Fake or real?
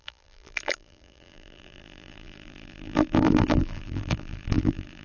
fake